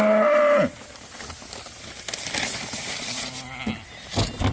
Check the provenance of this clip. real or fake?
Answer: real